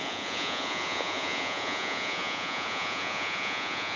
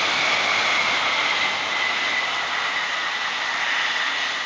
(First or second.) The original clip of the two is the second